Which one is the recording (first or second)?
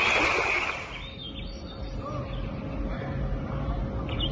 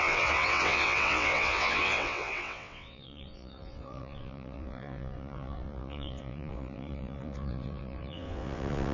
first